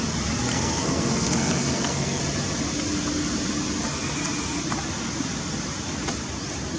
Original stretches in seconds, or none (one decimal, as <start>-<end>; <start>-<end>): 0.0-0.5; 2.2-6.8